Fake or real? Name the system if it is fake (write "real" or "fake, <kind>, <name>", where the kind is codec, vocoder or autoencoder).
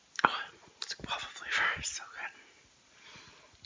real